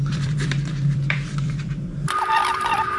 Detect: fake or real fake